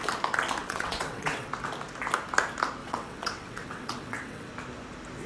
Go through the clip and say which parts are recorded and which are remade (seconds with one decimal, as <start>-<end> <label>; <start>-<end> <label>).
0.0-0.6 recorded; 0.6-1.5 remade; 1.5-2.8 recorded; 2.8-4.5 remade; 4.5-5.3 recorded